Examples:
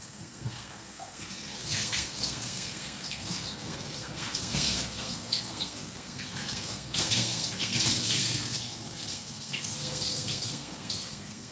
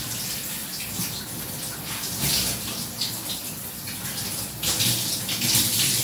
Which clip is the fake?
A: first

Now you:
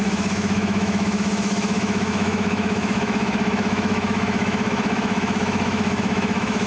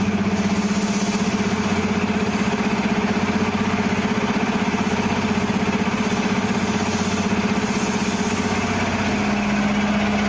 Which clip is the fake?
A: first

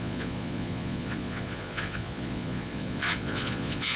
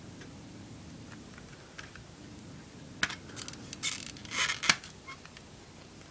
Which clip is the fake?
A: first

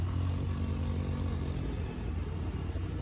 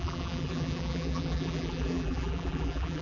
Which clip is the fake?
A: second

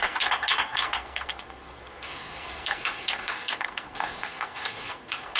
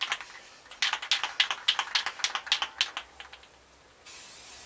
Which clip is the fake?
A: first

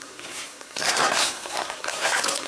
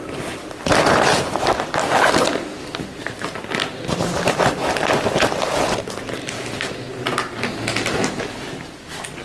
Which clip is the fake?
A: first